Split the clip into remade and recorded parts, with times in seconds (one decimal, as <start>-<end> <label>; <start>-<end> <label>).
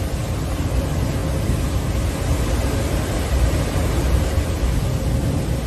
0.0-5.7 recorded